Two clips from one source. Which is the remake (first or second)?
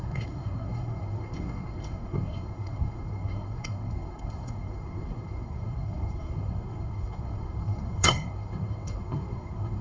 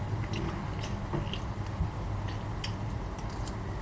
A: first